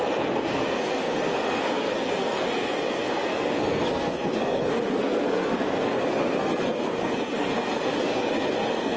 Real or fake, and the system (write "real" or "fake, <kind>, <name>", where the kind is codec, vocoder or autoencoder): fake, codec, SNAC